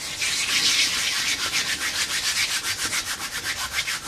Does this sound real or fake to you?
real